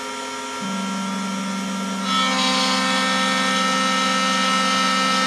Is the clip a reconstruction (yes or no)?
no